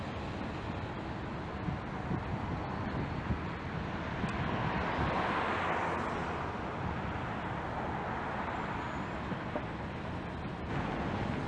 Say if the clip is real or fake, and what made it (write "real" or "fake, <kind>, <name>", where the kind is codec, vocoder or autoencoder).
real